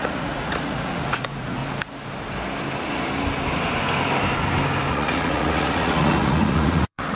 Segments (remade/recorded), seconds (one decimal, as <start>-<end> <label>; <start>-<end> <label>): 0.0-1.6 remade; 1.6-4.9 recorded; 4.9-7.2 remade